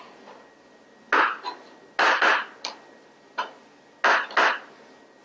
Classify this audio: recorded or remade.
recorded